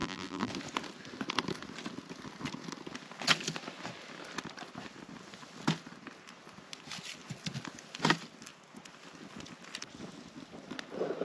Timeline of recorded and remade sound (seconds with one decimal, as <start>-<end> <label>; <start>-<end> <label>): 0.0-0.5 remade; 0.5-11.2 recorded